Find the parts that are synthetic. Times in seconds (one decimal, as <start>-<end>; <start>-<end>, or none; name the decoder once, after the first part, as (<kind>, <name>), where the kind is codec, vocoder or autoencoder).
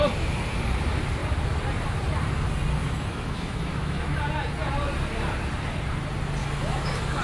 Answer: 2.8-4.2 (autoencoder, DAC-VAE); 6.4-7.2